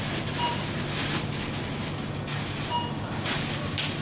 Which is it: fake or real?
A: real